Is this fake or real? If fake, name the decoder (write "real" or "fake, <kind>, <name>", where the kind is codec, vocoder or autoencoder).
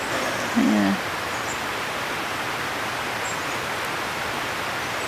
real